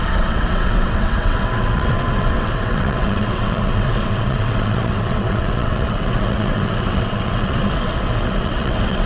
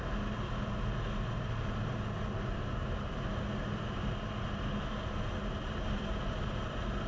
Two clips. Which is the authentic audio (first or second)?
second